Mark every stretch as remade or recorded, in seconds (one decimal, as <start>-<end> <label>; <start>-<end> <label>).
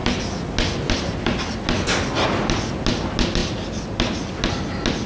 0.0-5.1 recorded